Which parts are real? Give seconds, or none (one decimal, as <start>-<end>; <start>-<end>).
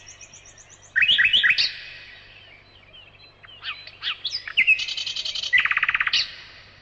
0.0-6.8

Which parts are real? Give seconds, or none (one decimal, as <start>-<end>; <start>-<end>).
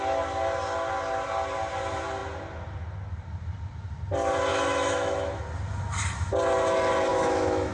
0.0-4.5; 5.4-7.1